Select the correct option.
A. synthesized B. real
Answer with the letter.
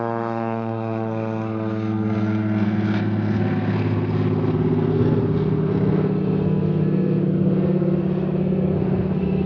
A